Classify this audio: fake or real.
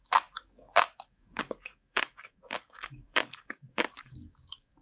fake